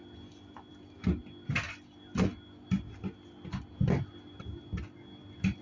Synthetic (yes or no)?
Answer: no